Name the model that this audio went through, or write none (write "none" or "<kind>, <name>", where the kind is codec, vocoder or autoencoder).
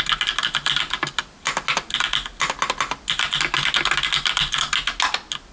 none